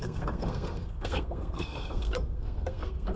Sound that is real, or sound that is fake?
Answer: fake